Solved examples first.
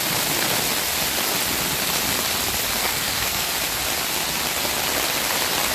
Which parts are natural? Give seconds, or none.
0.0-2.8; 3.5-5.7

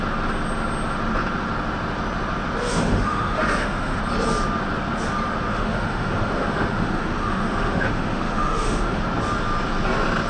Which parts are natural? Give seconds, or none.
0.0-2.6; 4.0-5.5; 9.0-10.3

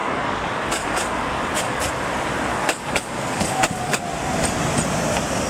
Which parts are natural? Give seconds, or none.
1.9-2.5; 4.0-5.5

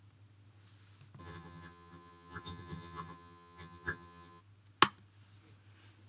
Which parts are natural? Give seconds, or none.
0.0-1.2; 4.4-6.1

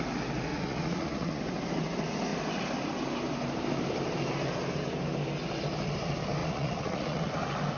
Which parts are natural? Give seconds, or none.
0.0-0.5; 1.4-6.4; 7.3-7.8

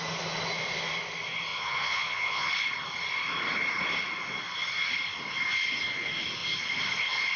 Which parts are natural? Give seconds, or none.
0.0-1.5; 2.5-7.4

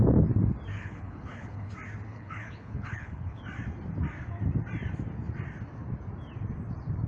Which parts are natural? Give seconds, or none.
0.0-0.7; 1.7-2.1; 3.4-7.1

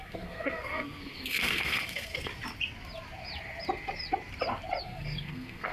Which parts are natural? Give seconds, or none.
2.3-4.8